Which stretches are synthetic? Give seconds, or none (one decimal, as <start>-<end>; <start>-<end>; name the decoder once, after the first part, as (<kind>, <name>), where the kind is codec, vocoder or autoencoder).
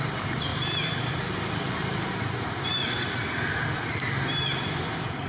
0.5-1.6 (vocoder, BigVGAN v2)